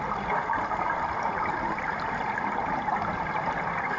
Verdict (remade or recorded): recorded